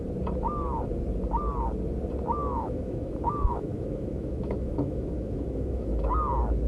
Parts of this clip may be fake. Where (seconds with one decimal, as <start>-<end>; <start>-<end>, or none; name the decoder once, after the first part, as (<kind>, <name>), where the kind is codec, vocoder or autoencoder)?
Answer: 2.4-6.1 (autoencoder, DAC-VAE)